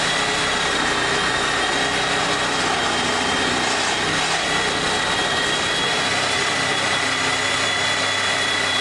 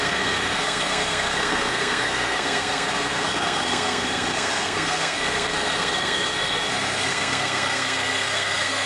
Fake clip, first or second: second